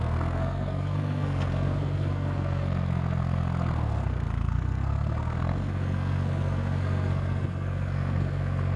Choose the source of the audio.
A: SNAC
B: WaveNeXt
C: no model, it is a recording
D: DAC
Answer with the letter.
A